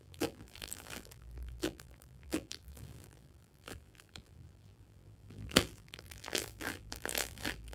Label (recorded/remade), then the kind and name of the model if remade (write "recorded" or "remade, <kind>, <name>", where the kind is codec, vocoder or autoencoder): remade, vocoder, BigVGAN v2